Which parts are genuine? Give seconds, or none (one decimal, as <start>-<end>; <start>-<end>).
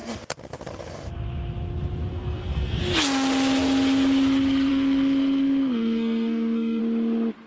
0.0-2.1; 2.8-4.7; 6.8-7.5